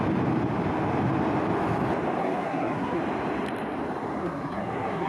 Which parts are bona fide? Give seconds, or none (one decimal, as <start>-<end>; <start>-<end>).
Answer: 0.0-2.2; 3.0-4.2